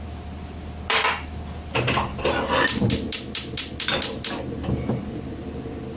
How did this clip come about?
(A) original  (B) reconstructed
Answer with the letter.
A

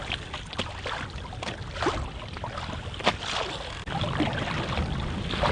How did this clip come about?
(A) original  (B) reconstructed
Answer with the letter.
A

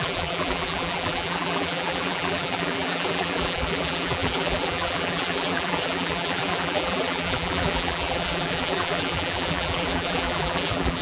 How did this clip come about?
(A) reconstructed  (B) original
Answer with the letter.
A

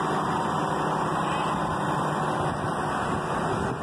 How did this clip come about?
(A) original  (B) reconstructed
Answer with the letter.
A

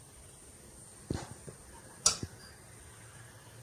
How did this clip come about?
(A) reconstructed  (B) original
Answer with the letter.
B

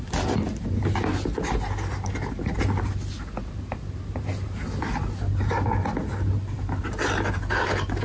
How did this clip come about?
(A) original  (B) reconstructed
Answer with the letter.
A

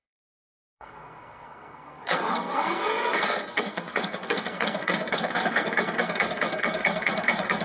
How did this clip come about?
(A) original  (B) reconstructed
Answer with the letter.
B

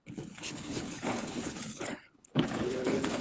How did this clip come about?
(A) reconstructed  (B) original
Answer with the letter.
A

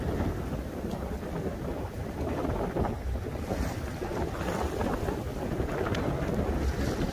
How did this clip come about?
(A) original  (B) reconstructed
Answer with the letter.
A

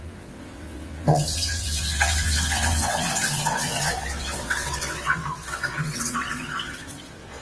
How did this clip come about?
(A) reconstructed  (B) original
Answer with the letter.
A